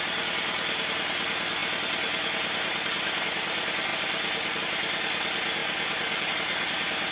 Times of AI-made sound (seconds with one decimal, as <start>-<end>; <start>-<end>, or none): none